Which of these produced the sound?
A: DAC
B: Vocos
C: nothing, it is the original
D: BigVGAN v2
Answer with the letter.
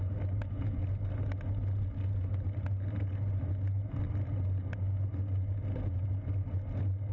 C